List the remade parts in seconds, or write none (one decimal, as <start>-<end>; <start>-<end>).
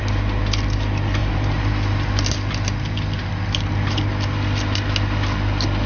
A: 1.2-1.7